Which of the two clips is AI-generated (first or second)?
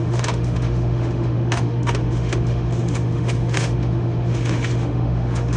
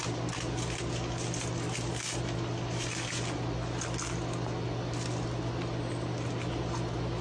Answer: first